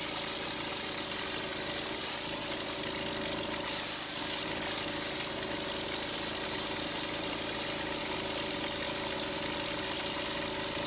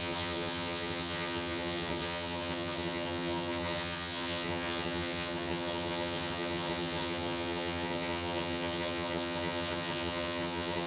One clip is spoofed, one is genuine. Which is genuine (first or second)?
first